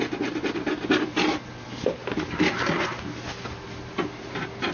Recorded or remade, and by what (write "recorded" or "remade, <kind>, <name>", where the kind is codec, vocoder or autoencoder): recorded